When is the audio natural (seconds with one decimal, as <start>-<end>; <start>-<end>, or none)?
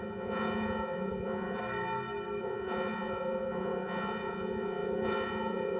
1.6-2.4